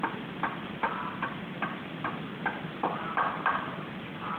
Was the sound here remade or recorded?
recorded